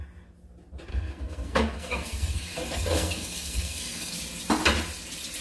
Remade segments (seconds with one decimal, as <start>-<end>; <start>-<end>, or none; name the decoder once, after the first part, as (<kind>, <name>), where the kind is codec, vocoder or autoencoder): 0.9-4.1 (codec, SNAC)